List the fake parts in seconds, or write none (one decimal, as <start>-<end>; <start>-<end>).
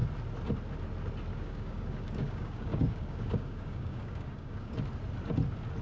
1.3-4.8